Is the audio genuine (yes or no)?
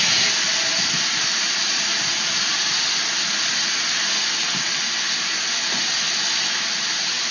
yes